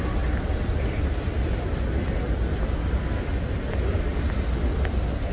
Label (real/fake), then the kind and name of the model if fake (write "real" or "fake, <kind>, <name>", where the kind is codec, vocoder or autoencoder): real